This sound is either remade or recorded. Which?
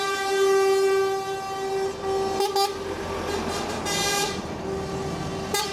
recorded